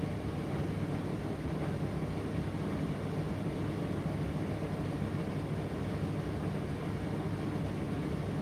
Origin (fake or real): real